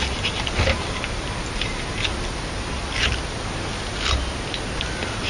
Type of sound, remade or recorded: recorded